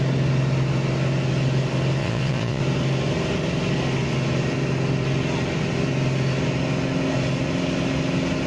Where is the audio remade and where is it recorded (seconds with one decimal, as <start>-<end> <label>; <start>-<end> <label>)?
0.0-2.0 recorded; 2.0-2.6 remade; 2.6-8.5 recorded